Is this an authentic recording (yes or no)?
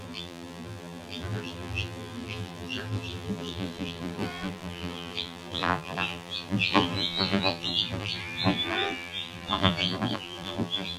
no